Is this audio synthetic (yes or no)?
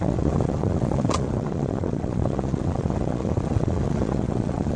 yes